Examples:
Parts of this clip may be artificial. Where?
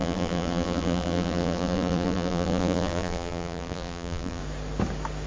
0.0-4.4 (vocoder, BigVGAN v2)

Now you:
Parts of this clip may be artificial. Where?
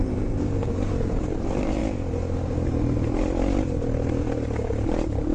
0.0-1.8 (vocoder, BigVGAN v2); 4.8-5.3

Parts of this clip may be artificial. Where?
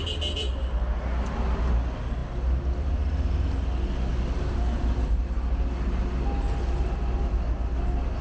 0.0-0.6 (vocoder, BigVGAN v2)